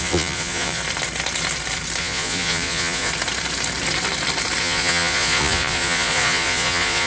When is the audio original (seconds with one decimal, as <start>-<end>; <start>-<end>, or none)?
0.8-2.0; 3.1-4.6